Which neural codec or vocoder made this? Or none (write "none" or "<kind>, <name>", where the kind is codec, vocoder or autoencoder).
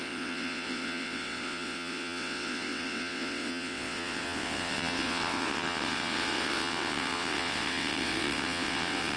vocoder, WaveNeXt